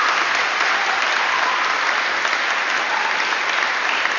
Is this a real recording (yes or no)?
yes